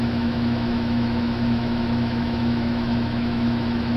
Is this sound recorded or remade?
remade